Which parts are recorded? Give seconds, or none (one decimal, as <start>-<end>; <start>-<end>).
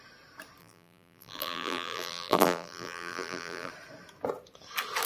0.0-0.6; 3.7-5.1